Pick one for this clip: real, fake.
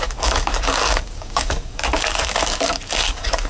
fake